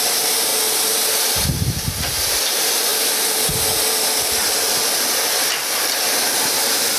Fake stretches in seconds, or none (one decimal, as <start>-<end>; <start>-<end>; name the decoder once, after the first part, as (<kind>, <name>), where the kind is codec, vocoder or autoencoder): 0.0-0.5 (vocoder, BigVGAN v2); 1.2-2.9; 6.3-7.0